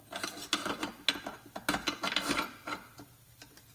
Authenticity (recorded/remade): recorded